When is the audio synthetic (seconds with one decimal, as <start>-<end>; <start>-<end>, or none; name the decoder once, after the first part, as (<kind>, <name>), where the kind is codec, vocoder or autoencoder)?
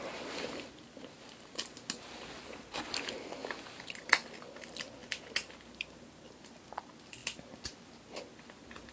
none